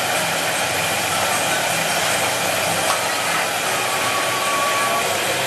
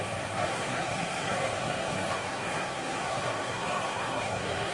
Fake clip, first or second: second